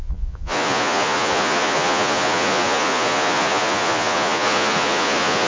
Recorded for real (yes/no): no